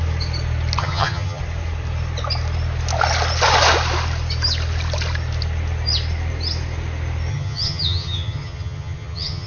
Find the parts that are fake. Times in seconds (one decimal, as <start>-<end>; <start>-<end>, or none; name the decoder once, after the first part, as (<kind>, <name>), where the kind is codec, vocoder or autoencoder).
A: 0.8-1.4 (vocoder, HiFi-GAN); 7.3-9.5